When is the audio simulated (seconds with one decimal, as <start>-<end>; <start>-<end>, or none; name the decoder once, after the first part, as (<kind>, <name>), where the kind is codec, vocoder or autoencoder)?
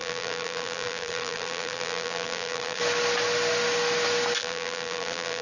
0.0-2.8 (vocoder, BigVGAN v2); 4.4-5.4